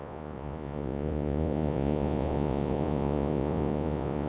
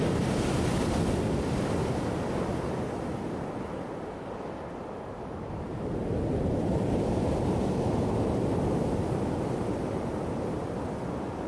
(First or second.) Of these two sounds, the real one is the second